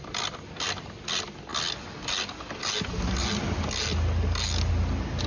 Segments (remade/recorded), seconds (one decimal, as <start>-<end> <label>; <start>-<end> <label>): 0.0-5.3 recorded